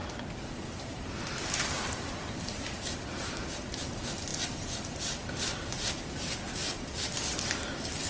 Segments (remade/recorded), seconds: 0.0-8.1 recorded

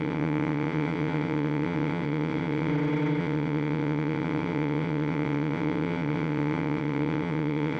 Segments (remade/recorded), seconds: 0.0-2.7 remade; 2.7-3.2 recorded; 3.2-7.8 remade

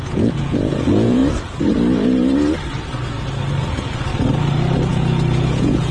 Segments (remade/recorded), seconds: 0.0-1.2 remade; 1.2-3.6 recorded; 3.6-4.1 remade; 4.1-4.9 recorded; 4.9-5.9 remade

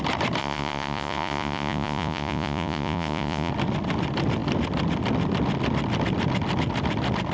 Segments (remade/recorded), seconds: 0.0-0.4 recorded; 0.4-3.5 remade; 3.5-7.3 recorded

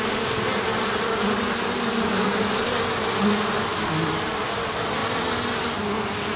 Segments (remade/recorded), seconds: 0.0-6.4 recorded

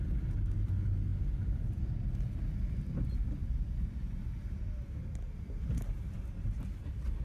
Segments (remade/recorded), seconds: 0.0-7.2 recorded

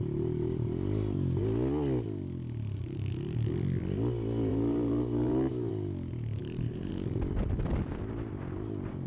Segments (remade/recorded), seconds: 0.0-4.5 recorded; 4.5-5.7 remade; 5.7-6.4 recorded; 6.4-6.9 remade; 6.9-9.1 recorded